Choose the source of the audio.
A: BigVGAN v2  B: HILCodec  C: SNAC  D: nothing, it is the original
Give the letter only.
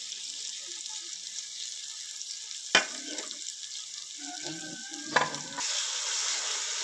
D